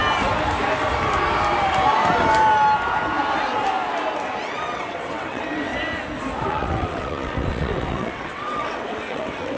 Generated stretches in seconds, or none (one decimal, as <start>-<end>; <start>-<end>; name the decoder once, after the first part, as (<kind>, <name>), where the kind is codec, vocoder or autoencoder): 4.4-5.7 (vocoder, WaveNeXt); 6.5-9.6